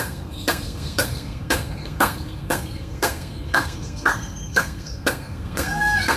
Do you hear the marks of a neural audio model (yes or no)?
yes